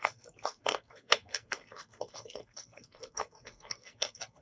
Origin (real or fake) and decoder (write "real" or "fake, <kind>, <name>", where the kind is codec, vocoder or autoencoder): fake, codec, SNAC